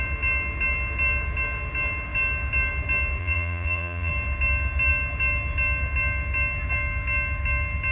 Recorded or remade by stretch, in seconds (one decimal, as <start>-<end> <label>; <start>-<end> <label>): 0.0-3.2 recorded; 3.2-4.1 remade; 4.1-7.9 recorded